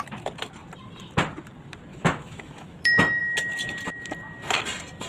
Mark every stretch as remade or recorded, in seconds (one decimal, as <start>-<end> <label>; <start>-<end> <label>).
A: 0.0-1.9 recorded; 1.9-3.2 remade; 3.2-5.1 recorded